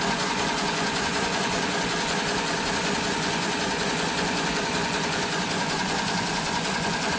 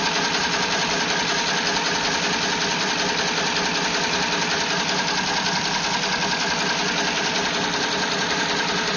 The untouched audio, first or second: second